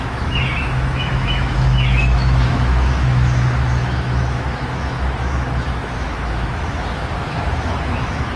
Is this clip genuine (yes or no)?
no